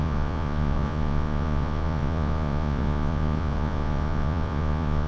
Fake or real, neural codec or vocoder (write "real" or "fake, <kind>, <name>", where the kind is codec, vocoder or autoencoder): fake, vocoder, Vocos